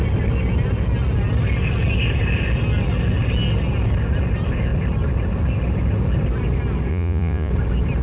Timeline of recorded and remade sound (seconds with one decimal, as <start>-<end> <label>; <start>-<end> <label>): 0.0-6.9 recorded; 6.9-7.5 remade; 7.5-8.0 recorded